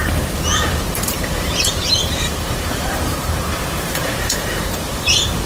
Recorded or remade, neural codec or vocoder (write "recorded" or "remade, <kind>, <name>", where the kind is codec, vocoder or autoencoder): remade, vocoder, BigVGAN v2